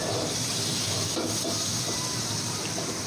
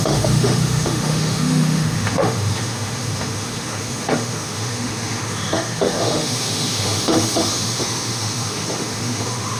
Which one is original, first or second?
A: first